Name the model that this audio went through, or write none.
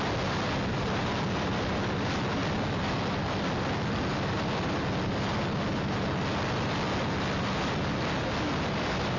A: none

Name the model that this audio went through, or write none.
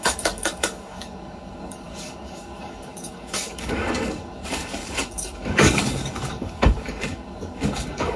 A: codec, DAC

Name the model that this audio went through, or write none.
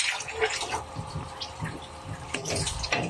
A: none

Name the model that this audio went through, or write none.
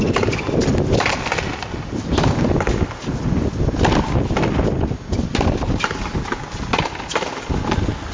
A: none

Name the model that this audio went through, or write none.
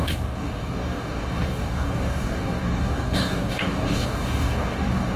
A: codec, DAC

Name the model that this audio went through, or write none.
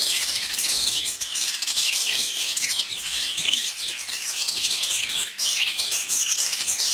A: codec, DAC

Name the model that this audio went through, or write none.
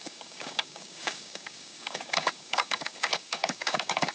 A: codec, DAC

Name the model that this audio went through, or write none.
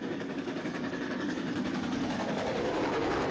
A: codec, DAC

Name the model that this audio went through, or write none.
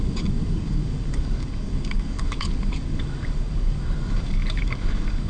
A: codec, DAC